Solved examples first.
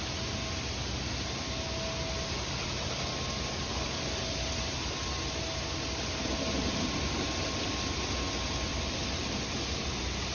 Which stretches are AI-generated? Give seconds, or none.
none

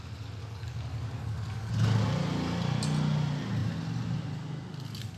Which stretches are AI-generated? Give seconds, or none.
0.4-1.7 (codec, DAC)

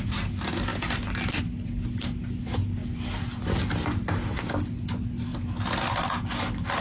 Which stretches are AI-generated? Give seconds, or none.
none

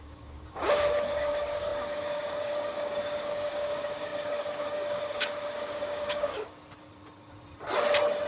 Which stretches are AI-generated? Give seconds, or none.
0.0-6.3 (codec, DAC)

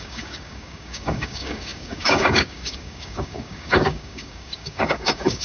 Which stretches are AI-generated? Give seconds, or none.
0.0-5.4 (codec, DAC)

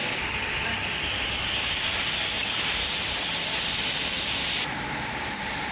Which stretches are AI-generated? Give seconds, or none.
none

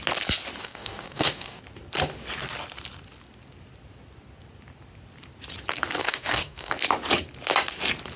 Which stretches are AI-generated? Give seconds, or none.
0.6-1.6 (codec, DAC); 6.0-6.7

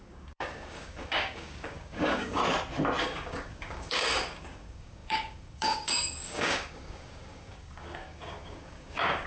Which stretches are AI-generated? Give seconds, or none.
0.0-2.4 (codec, DAC); 3.0-9.3